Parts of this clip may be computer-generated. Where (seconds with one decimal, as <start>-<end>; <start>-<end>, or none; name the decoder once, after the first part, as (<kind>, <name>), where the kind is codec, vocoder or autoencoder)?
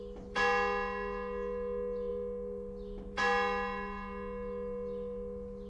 none